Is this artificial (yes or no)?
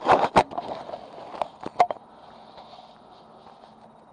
no